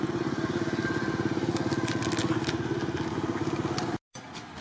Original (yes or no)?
yes